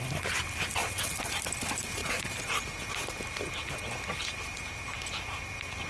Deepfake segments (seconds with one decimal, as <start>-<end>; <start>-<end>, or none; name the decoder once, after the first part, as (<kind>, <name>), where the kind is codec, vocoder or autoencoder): none